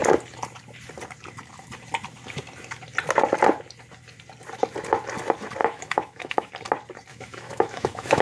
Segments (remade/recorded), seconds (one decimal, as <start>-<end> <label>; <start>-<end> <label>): 0.0-5.6 recorded; 5.6-6.5 remade; 6.5-7.1 recorded; 7.1-8.2 remade